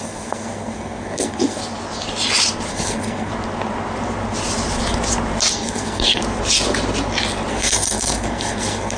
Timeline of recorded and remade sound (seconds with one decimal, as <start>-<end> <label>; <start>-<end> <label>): 0.0-1.6 remade; 1.6-2.7 recorded; 2.7-3.3 remade; 3.3-5.5 recorded; 5.5-6.2 remade; 6.2-7.5 recorded; 7.5-9.0 remade